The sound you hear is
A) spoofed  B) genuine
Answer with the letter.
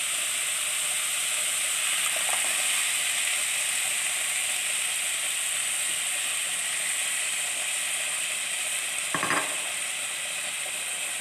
B